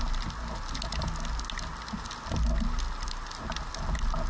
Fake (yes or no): no